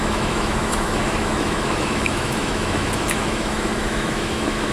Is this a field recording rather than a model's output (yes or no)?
no